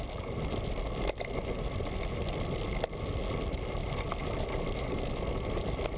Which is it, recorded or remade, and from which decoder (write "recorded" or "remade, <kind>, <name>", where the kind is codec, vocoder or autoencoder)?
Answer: recorded